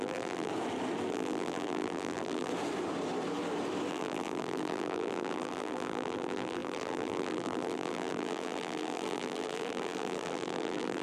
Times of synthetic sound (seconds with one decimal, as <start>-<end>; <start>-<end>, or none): 0.0-0.5; 1.1-2.5; 3.9-11.0